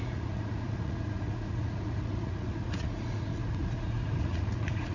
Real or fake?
fake